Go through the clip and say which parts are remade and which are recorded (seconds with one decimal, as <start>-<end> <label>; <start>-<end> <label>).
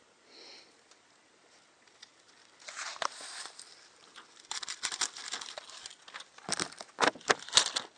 0.0-8.0 recorded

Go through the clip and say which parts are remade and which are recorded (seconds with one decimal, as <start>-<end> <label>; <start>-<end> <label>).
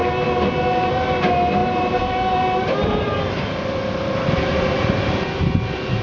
0.0-1.6 recorded; 1.6-5.1 remade; 5.1-6.0 recorded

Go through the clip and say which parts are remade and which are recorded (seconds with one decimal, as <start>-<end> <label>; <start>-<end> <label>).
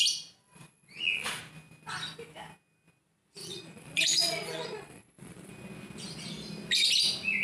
0.0-0.4 recorded; 0.4-1.4 remade; 1.4-3.4 recorded; 3.4-5.5 remade; 5.5-7.4 recorded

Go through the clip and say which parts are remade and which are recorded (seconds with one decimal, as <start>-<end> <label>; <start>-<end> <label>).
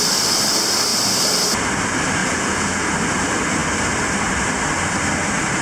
0.0-2.2 recorded; 2.2-2.8 remade; 2.8-5.6 recorded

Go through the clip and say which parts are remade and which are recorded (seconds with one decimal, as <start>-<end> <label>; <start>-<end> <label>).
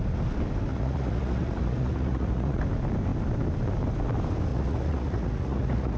0.0-0.7 recorded; 0.7-2.6 remade; 2.6-4.5 recorded; 4.5-6.0 remade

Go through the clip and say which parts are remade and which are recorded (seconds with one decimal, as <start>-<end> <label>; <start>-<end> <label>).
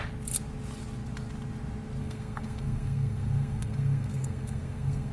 0.0-2.0 recorded; 2.0-5.1 remade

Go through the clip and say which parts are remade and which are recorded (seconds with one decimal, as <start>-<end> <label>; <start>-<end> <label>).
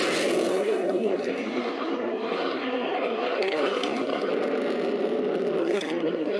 0.0-0.5 recorded; 0.5-4.3 remade; 4.3-5.6 recorded; 5.6-6.4 remade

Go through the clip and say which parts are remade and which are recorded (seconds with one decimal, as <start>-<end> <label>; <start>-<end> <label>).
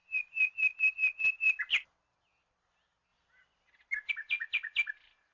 0.0-5.3 recorded